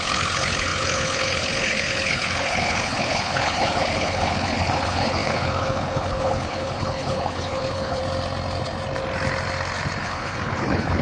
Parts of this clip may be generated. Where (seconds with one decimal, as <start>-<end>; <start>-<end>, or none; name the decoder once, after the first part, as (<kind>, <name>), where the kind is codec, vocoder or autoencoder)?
0.0-8.0 (codec, HILCodec); 10.0-11.0